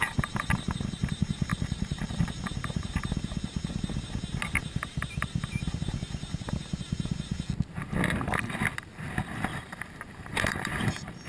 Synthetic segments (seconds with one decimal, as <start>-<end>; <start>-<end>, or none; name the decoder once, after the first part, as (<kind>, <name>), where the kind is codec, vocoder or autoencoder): 1.5-2.4 (vocoder, BigVGAN v2); 9.5-11.3